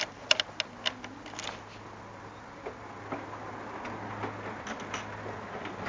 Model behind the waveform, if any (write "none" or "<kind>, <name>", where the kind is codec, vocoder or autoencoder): none